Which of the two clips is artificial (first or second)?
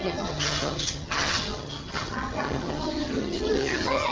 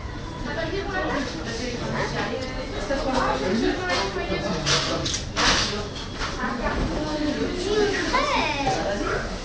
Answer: first